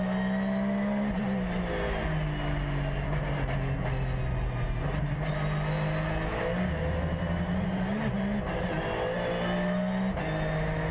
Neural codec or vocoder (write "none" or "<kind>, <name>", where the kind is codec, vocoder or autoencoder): none